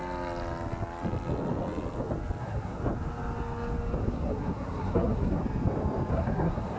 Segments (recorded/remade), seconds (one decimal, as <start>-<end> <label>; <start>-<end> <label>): 0.0-2.4 recorded; 2.4-2.8 remade; 2.8-4.0 recorded; 4.0-5.4 remade; 5.4-6.1 recorded; 6.1-6.8 remade